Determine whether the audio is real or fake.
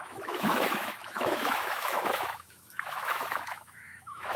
fake